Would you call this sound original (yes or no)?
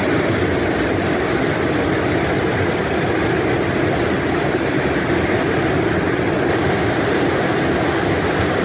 yes